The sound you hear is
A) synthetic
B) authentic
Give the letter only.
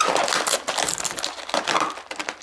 B